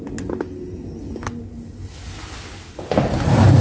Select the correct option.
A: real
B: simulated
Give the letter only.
A